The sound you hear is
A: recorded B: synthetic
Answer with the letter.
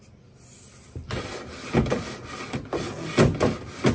A